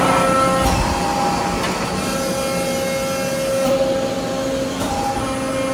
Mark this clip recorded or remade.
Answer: recorded